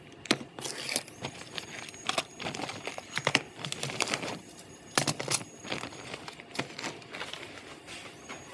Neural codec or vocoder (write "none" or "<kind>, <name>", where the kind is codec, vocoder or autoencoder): none